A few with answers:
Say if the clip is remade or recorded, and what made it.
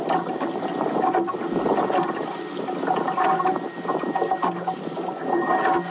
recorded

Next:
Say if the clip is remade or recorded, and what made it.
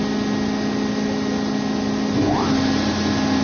recorded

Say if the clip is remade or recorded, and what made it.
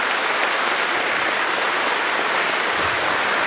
recorded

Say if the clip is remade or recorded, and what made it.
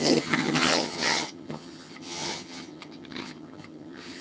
remade, vocoder, HiFi-GAN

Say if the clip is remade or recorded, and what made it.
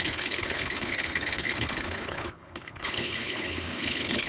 remade, codec, HILCodec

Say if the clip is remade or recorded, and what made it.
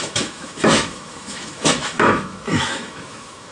remade, autoencoder, DAC-VAE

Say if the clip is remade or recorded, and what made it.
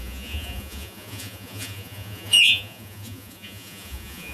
remade, vocoder, Vocos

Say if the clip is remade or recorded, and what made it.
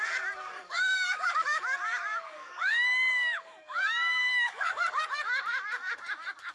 remade, codec, DAC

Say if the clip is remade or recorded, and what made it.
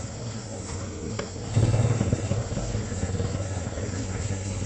remade, codec, SNAC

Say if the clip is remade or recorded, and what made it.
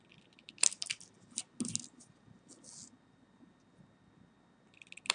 recorded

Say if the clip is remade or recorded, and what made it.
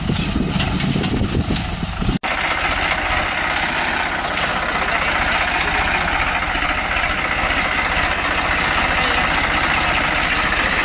recorded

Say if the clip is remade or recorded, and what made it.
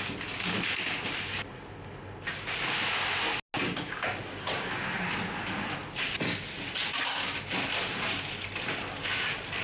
recorded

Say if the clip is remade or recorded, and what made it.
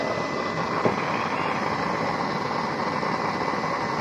recorded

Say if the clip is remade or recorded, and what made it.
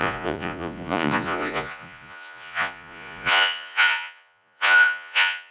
remade, vocoder, Vocos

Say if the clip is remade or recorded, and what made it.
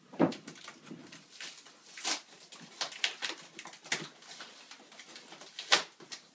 recorded